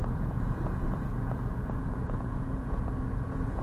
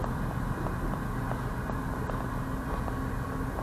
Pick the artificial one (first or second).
first